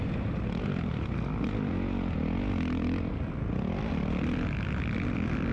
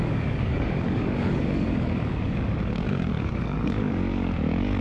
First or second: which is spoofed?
second